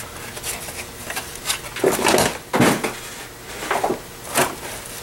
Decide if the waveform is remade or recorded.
recorded